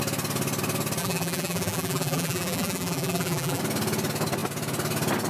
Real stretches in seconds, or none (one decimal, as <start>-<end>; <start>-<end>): 0.0-1.0; 3.6-5.3